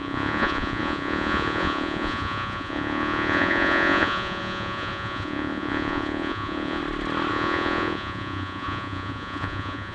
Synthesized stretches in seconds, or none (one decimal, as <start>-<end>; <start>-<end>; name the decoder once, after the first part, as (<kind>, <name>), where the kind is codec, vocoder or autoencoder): 0.0-6.8 (vocoder, Vocos); 7.3-9.9